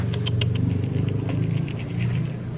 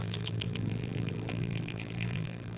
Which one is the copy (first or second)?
second